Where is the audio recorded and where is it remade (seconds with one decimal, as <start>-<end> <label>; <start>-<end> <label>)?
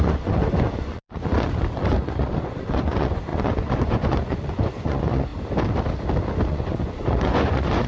0.0-5.3 remade; 5.3-6.5 recorded; 6.5-7.9 remade